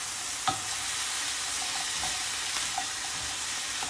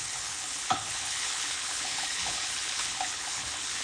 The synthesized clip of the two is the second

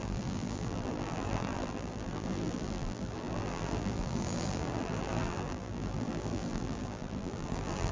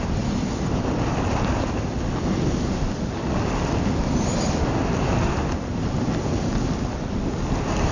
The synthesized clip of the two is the first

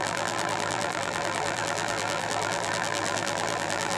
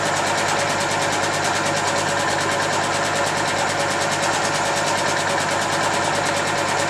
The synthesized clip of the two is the first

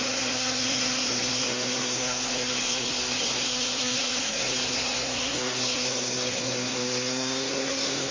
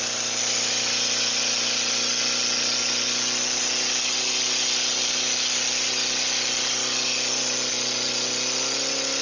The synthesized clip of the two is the first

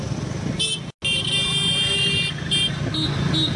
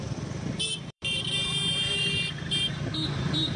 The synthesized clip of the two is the second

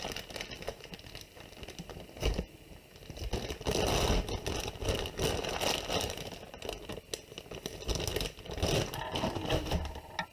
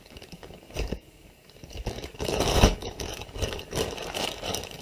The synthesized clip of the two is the second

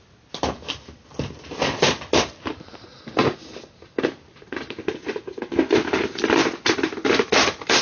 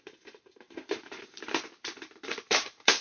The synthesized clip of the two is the second